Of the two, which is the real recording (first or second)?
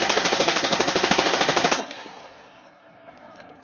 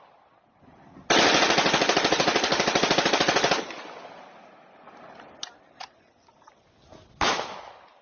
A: second